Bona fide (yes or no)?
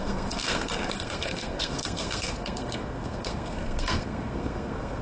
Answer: no